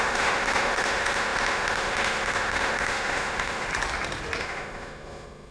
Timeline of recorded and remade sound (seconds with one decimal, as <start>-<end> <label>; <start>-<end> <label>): 0.0-3.7 remade; 3.7-4.4 recorded; 4.4-5.5 remade